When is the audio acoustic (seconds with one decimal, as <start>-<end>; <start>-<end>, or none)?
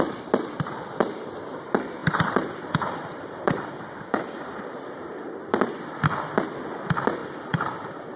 0.0-2.0; 5.3-7.2